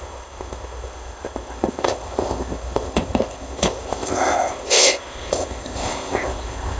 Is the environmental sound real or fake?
fake